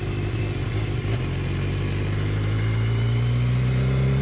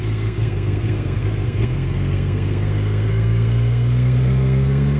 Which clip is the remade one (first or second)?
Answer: second